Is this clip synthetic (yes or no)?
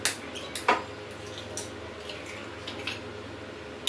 no